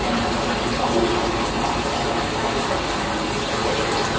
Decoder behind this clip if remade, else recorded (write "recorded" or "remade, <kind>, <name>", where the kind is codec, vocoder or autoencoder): recorded